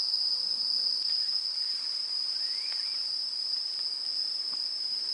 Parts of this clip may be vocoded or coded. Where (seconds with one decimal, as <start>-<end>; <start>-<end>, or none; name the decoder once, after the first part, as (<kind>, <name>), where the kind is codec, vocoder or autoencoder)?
0.5-3.6 (vocoder, BigVGAN v2); 4.3-5.1